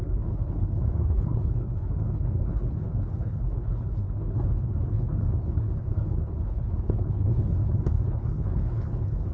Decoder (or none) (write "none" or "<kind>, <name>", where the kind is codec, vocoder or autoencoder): codec, HILCodec